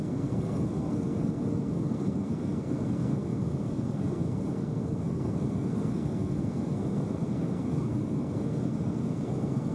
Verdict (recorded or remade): remade